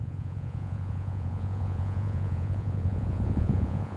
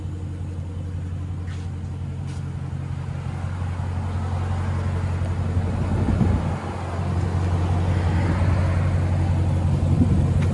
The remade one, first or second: first